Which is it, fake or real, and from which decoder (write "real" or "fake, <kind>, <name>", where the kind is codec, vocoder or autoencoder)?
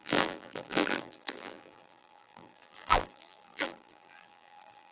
fake, vocoder, BigVGAN v2